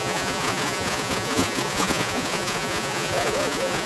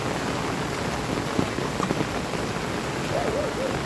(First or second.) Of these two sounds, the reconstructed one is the first